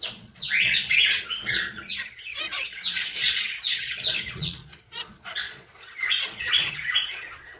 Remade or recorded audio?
remade